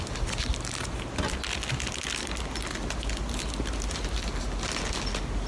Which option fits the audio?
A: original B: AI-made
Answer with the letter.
A